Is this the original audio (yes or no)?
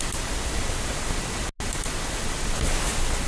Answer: yes